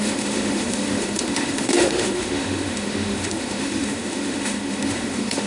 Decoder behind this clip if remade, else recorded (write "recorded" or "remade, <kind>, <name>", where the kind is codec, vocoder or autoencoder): remade, autoencoder, DAC-VAE